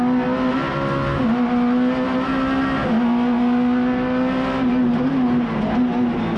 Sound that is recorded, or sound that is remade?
recorded